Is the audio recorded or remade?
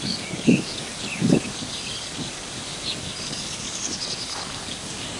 remade